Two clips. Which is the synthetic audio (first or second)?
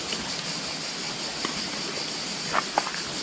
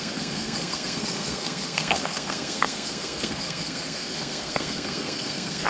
second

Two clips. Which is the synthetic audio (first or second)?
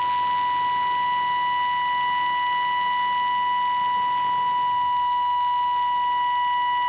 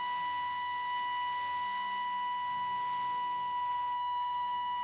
second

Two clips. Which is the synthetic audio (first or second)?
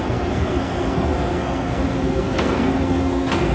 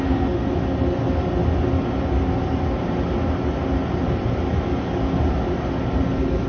first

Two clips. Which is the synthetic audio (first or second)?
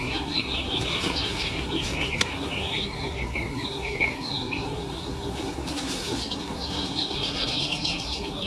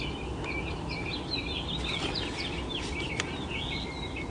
first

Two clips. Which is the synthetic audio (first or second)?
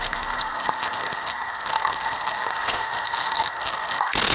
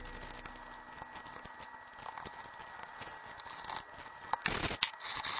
first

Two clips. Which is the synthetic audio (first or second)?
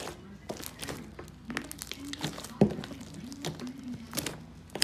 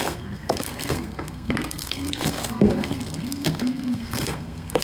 second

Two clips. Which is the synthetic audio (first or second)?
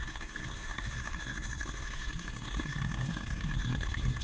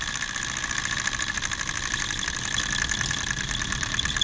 first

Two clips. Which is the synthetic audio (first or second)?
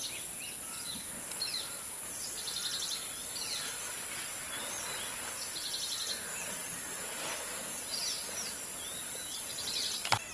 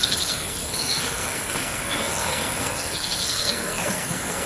second